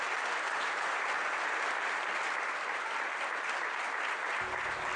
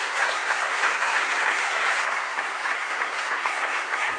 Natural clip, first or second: first